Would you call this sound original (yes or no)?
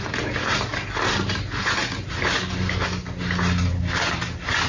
yes